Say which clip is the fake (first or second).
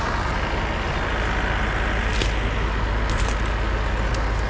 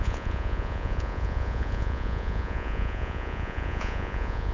second